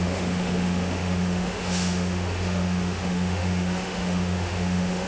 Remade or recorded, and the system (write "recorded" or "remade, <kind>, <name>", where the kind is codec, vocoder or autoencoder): remade, autoencoder, DAC-VAE